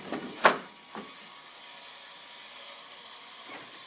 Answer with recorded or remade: recorded